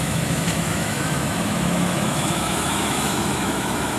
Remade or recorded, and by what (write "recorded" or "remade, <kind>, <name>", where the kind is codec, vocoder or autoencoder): remade, autoencoder, DAC-VAE